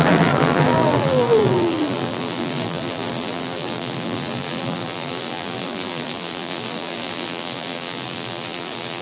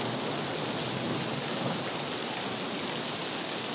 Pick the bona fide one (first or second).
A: second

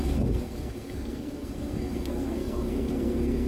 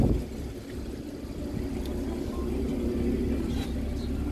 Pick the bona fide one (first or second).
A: second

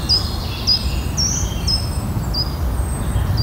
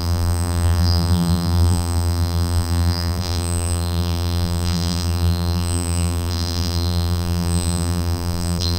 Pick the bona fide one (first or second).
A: first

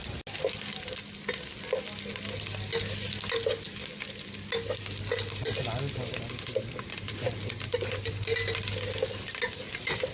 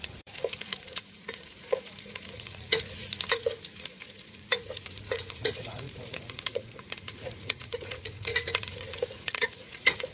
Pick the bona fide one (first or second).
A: first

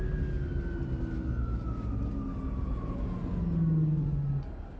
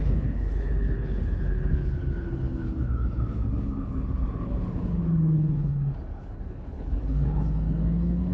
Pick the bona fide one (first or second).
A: first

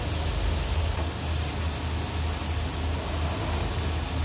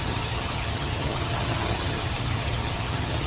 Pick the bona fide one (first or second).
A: first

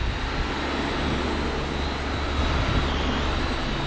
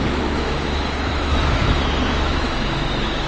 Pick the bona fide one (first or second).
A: first